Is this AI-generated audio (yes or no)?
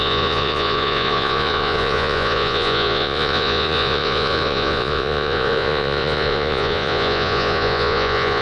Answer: yes